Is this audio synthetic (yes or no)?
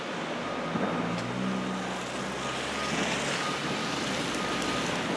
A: no